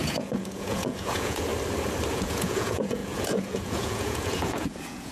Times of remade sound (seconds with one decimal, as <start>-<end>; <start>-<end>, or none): 0.0-1.5; 2.1-5.1